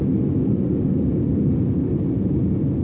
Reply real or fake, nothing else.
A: real